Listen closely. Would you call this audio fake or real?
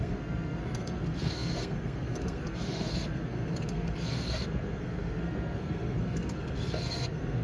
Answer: fake